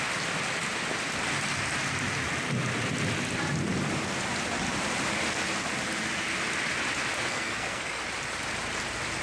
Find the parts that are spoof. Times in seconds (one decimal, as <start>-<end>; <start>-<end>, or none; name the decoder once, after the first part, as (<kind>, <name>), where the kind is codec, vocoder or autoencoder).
7.3-8.0 (codec, SNAC)